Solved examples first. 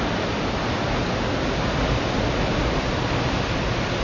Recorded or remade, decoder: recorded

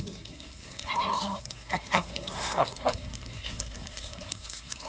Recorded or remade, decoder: remade, codec, SNAC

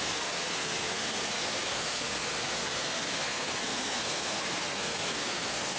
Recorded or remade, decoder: remade, codec, SNAC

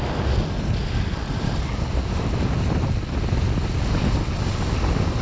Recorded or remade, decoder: recorded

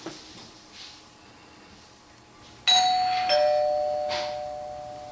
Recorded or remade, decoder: recorded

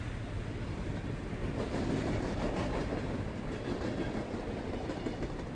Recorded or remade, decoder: remade, vocoder, BigVGAN v2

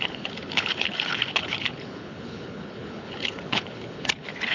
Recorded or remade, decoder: remade, codec, HILCodec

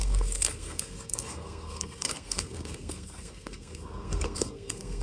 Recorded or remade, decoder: remade, codec, SNAC